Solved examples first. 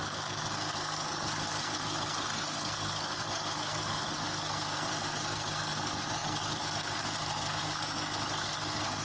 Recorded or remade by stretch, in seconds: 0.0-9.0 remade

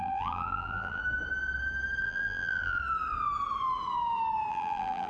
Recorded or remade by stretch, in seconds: 0.0-1.0 remade; 1.0-2.0 recorded; 2.0-2.8 remade; 2.8-4.5 recorded; 4.5-5.1 remade